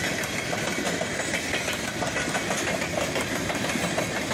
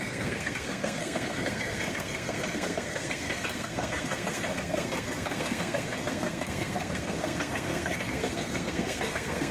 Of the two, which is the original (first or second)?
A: first